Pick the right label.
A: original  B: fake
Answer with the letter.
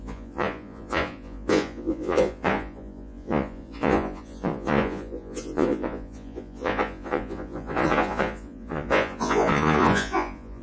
B